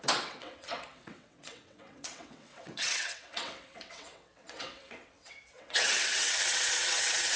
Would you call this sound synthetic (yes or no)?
yes